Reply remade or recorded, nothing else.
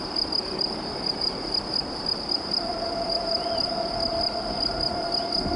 remade